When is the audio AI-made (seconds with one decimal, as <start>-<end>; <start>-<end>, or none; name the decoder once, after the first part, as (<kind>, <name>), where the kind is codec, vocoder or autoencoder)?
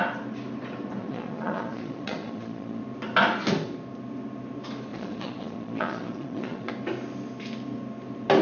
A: 1.0-2.8 (vocoder, Vocos); 4.9-6.7